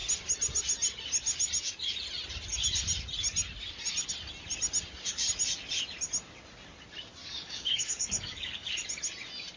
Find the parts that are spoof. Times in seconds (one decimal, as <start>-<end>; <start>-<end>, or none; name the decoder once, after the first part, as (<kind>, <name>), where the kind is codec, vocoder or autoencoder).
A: 7.2-8.7 (codec, DAC)